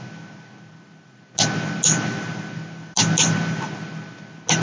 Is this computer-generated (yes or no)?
no